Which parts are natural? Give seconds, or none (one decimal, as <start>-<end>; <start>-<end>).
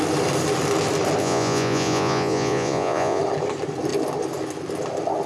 0.0-1.2; 3.2-5.3